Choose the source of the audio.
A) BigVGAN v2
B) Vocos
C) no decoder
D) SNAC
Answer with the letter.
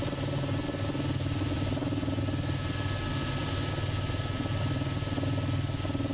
C